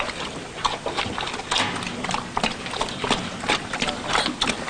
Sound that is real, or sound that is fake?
real